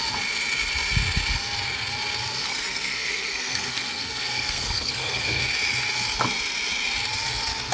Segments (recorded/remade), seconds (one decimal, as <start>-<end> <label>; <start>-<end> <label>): 0.0-2.4 recorded; 2.4-5.4 remade; 5.4-7.7 recorded